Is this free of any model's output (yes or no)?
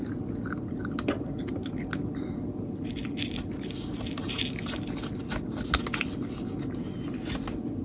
yes